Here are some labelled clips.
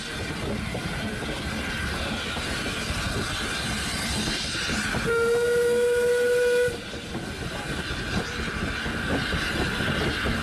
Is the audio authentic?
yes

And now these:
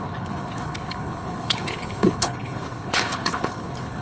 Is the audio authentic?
no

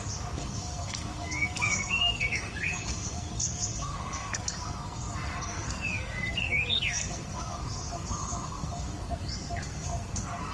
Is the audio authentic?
no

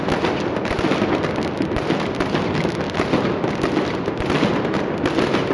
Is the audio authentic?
yes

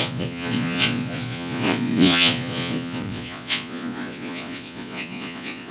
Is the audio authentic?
no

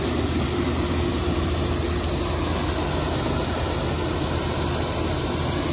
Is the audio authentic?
yes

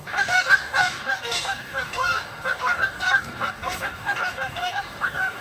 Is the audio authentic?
no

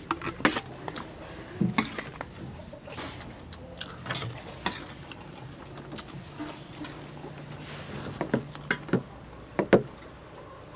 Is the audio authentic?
yes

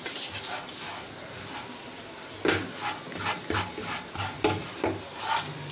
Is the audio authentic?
yes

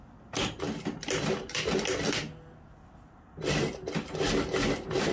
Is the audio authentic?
yes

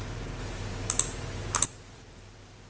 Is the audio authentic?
yes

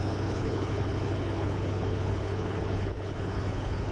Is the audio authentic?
no